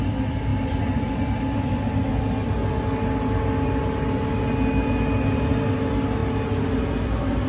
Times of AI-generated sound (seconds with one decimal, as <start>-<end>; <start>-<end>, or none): none